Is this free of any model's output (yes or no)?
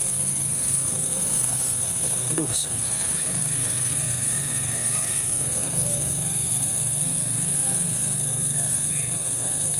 no